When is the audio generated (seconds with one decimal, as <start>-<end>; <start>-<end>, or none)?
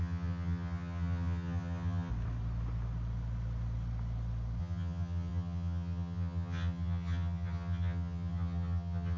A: 0.0-2.1; 4.6-9.2